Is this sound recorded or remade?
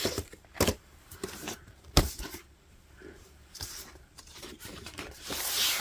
remade